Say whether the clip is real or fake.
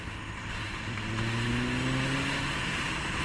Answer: real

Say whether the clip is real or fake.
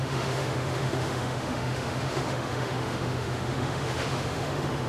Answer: fake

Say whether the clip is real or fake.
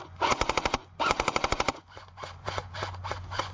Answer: fake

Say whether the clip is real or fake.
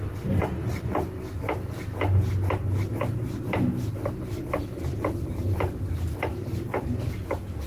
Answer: real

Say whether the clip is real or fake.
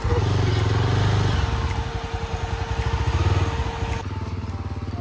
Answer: real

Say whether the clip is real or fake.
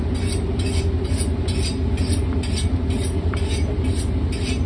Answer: real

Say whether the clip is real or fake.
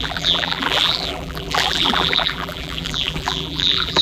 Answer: fake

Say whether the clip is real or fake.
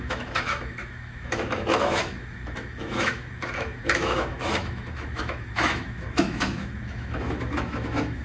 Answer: fake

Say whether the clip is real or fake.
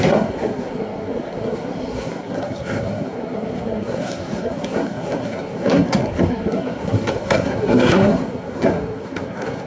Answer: fake